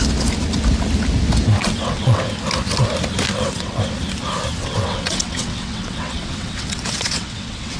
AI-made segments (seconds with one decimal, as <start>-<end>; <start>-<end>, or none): 1.6-2.2; 3.3-3.8; 4.6-7.8